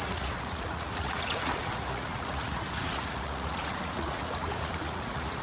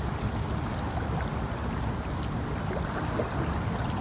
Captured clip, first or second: second